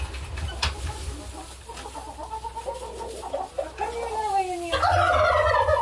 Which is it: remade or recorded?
recorded